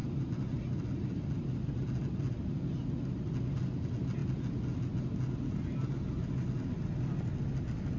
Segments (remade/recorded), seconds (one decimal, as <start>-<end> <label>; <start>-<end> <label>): 0.0-8.0 recorded